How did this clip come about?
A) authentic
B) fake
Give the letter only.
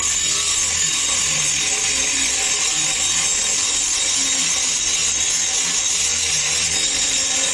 A